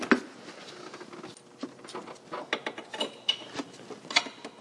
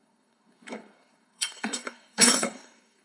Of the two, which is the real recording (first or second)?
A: first